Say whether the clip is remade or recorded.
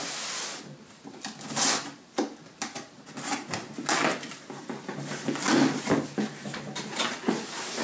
recorded